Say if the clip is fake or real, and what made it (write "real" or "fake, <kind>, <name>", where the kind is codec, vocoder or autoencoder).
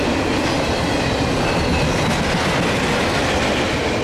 real